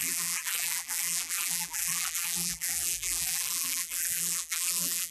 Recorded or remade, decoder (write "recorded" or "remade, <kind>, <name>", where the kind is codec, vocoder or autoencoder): remade, vocoder, BigVGAN v2